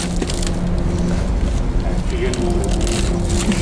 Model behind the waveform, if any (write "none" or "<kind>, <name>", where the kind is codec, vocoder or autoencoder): none